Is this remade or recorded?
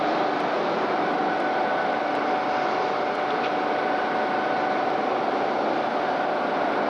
remade